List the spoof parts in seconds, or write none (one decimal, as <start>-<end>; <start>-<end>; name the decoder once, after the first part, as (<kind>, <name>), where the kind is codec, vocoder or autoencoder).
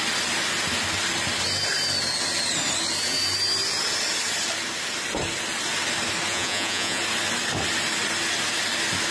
6.3-7.0 (vocoder, Vocos)